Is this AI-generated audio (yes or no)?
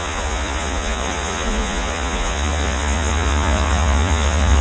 yes